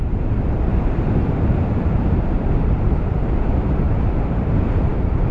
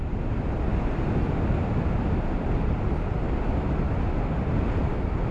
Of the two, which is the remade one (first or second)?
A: first